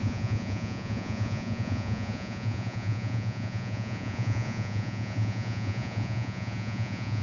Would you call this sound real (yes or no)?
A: no